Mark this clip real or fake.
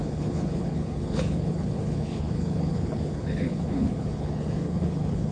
fake